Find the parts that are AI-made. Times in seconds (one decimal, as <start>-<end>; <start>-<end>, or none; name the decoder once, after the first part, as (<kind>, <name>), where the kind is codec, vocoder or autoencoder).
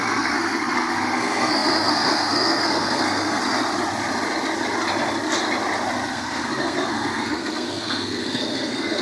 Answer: 0.0-3.4 (codec, SNAC); 6.1-9.0